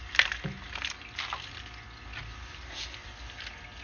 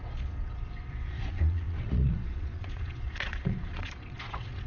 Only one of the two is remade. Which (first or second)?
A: second